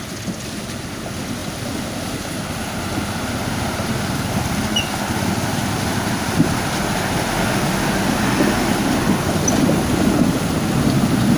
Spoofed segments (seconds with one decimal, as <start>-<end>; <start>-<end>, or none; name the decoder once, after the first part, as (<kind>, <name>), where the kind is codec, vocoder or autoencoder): none